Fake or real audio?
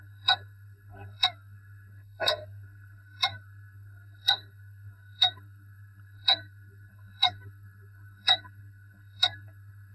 fake